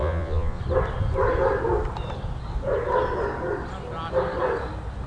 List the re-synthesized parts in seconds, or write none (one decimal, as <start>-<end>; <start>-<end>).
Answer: 0.0-0.6